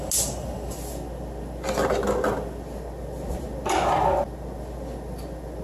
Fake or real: real